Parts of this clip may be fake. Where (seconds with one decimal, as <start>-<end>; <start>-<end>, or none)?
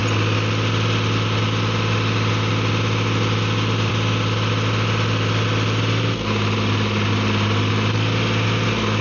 none